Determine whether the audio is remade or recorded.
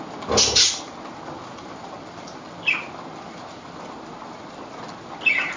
recorded